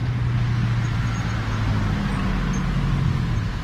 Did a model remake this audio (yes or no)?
no